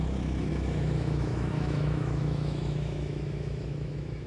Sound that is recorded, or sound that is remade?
remade